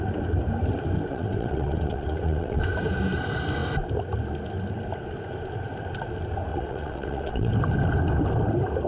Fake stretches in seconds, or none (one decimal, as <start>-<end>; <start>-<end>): 1.1-2.6; 6.5-7.5